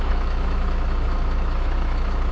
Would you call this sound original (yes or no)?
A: no